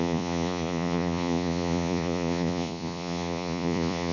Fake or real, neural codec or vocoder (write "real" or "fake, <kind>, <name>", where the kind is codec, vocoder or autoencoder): fake, vocoder, Vocos